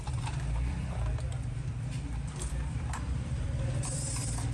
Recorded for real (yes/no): no